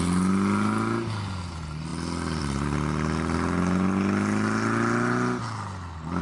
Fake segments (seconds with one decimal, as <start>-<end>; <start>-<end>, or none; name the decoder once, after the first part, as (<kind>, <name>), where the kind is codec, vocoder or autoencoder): none